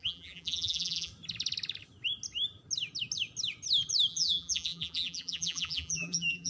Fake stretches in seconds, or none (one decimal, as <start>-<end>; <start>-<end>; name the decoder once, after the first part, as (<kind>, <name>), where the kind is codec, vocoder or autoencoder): 0.0-1.1 (vocoder, BigVGAN v2); 4.1-6.5

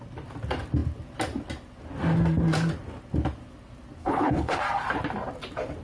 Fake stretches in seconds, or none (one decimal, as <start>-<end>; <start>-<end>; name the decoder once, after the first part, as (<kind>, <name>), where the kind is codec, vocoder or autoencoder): 4.0-4.6 (codec, HILCodec)